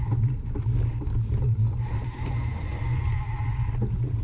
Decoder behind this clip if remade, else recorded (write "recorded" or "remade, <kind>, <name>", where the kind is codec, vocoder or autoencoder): recorded